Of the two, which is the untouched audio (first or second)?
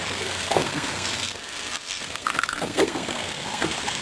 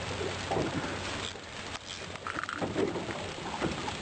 second